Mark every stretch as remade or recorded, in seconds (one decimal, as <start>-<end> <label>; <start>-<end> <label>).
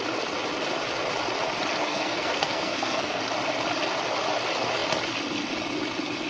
0.0-1.8 recorded; 1.8-3.2 remade; 3.2-6.3 recorded